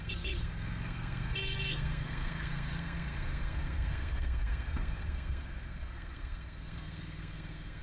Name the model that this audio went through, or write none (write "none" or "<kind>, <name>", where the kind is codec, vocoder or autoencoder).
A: codec, SNAC